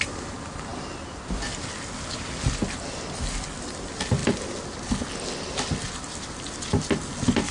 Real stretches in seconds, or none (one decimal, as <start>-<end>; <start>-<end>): 0.0-7.5